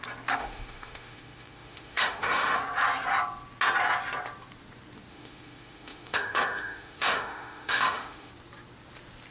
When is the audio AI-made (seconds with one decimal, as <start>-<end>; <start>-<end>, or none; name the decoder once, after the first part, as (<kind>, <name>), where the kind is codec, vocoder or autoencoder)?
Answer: 0.4-2.6 (autoencoder, DAC-VAE); 5.1-8.3